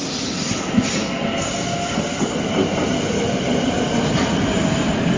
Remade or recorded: recorded